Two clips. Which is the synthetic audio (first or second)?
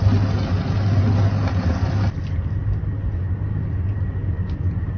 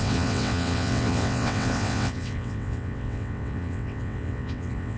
second